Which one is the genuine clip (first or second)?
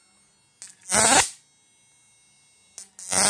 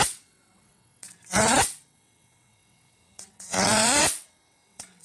first